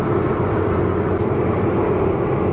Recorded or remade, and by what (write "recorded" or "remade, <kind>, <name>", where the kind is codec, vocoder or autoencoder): recorded